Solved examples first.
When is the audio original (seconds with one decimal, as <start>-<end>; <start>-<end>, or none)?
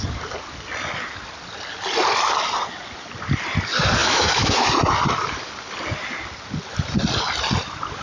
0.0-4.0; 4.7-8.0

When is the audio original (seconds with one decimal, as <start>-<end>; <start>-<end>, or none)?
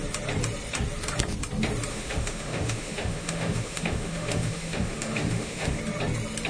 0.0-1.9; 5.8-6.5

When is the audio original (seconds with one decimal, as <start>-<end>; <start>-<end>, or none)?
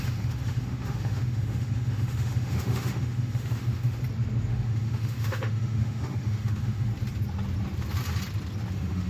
4.0-4.5; 6.9-8.7